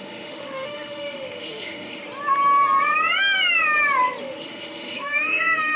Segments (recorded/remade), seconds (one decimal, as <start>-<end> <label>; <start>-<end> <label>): 0.0-2.0 remade; 2.0-4.2 recorded; 4.2-5.8 remade